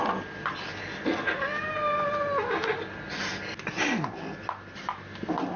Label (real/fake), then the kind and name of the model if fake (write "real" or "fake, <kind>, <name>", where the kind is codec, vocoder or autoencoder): real